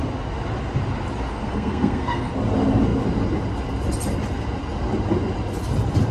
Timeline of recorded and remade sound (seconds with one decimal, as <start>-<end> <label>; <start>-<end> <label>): 0.0-1.3 recorded; 1.3-2.3 remade; 2.3-6.1 recorded